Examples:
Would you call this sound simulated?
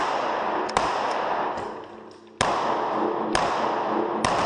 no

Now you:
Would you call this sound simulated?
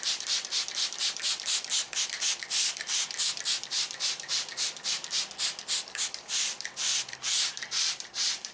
yes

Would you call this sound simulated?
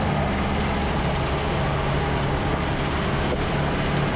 no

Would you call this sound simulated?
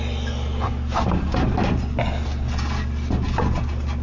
no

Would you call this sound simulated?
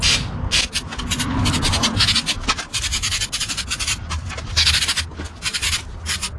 no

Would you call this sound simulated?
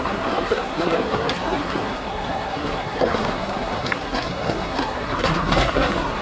yes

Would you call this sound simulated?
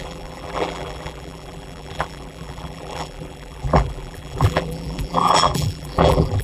yes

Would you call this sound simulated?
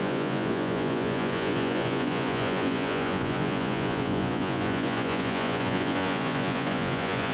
yes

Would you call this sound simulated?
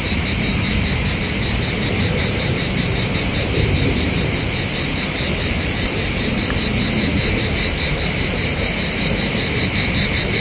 yes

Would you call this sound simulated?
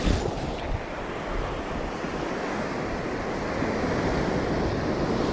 no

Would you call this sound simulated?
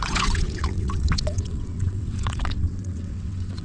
yes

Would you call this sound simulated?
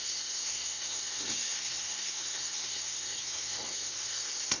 yes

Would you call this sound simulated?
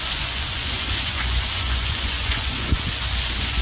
yes